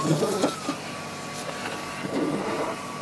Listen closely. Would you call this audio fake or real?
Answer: real